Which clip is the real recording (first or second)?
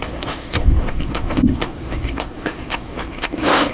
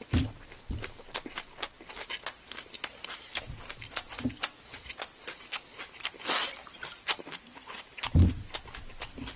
second